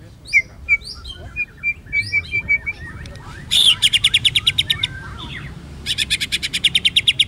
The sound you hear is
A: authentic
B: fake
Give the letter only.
B